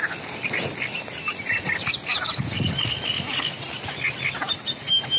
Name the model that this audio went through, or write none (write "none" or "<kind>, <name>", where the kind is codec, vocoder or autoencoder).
none